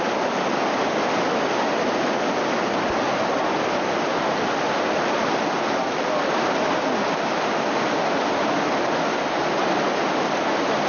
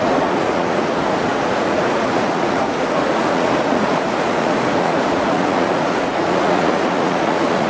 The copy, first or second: second